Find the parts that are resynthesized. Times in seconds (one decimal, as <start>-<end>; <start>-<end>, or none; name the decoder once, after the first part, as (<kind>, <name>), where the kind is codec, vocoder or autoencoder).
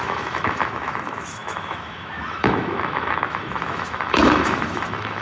0.0-5.2 (autoencoder, DAC-VAE)